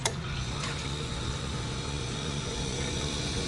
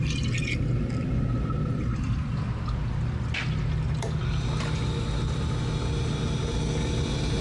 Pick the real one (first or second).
second